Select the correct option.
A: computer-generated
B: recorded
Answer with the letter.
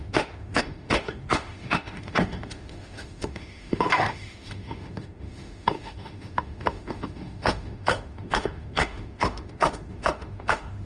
A